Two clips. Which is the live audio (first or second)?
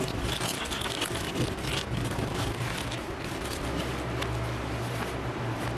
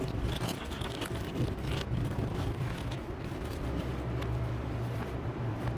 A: first